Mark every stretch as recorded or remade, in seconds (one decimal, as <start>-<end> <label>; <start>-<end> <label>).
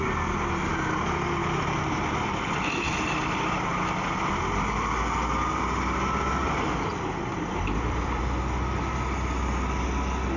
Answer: 0.0-1.4 recorded; 1.4-2.8 remade; 2.8-6.4 recorded; 6.4-8.2 remade; 8.2-10.4 recorded